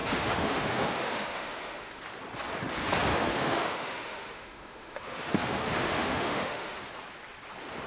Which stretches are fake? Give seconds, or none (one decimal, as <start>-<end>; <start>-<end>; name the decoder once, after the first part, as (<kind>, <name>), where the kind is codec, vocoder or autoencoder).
0.0-2.0 (autoencoder, DAC-VAE); 3.1-6.8